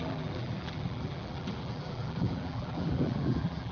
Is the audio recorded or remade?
remade